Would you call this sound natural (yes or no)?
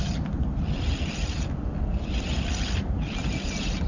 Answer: yes